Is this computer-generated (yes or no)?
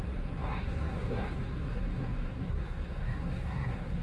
yes